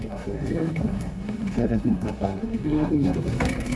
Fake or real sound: fake